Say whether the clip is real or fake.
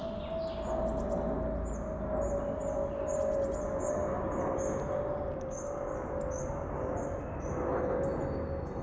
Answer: real